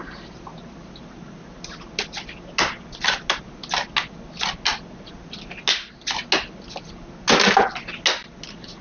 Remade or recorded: recorded